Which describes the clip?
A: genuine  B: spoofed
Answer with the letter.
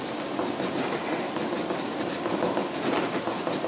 A